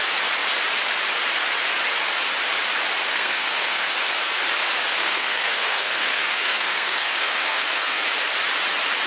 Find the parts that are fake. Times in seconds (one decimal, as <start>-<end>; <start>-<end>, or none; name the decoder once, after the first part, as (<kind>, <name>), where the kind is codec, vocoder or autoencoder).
3.1-3.9 (codec, SNAC); 5.0-8.0